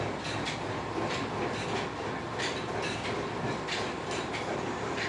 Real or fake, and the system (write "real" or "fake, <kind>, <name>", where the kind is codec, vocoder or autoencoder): fake, vocoder, BigVGAN v2